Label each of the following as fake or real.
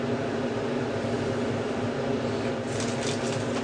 fake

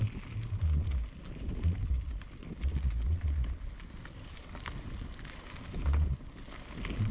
real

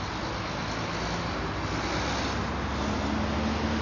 real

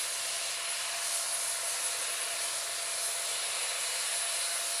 real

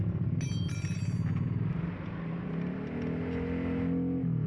real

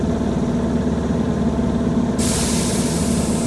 real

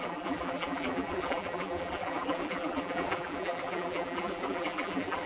fake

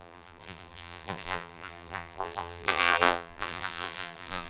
fake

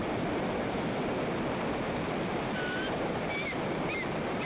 real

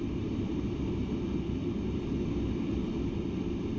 real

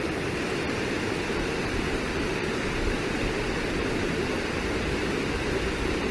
real